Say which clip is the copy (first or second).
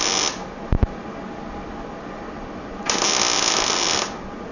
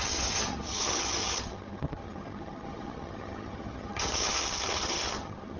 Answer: second